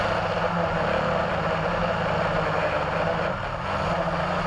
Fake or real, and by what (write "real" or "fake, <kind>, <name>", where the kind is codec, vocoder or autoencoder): real